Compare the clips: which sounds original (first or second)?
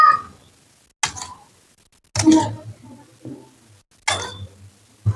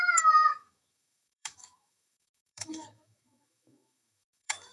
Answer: first